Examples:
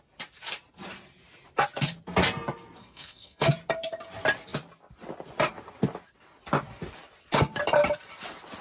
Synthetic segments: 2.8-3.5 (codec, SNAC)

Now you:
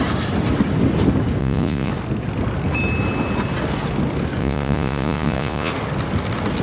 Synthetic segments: 1.4-1.9 (vocoder, Vocos); 4.4-5.7

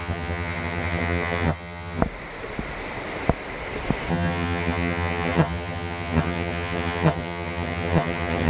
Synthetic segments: 0.0-2.0 (vocoder, HiFi-GAN); 4.1-8.5

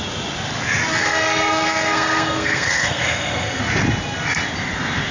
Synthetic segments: 1.0-3.6 (codec, SNAC)

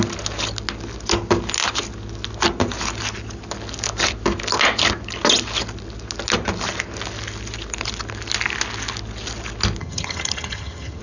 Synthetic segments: 9.8-11.0 (vocoder, HiFi-GAN)

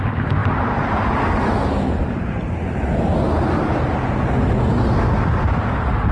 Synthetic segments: none

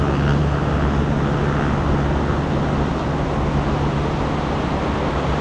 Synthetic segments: none